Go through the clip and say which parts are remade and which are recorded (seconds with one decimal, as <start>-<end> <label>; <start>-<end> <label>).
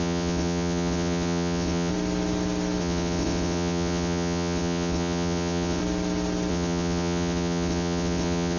0.0-1.9 remade; 1.9-2.8 recorded; 2.8-5.8 remade; 5.8-6.5 recorded; 6.5-8.6 remade